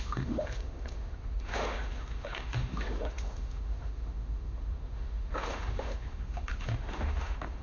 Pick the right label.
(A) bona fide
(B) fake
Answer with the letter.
B